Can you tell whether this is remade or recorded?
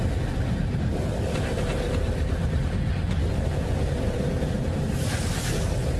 recorded